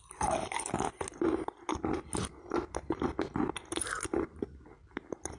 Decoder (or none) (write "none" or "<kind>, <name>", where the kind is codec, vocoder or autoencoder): none